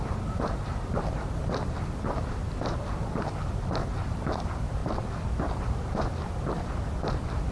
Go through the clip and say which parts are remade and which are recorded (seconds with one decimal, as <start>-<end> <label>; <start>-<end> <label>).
0.0-7.5 recorded